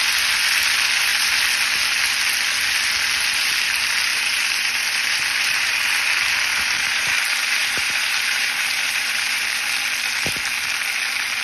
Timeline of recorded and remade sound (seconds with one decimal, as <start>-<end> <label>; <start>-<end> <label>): 0.0-4.1 recorded; 4.1-5.2 remade; 5.2-6.5 recorded; 6.5-9.6 remade; 9.6-11.4 recorded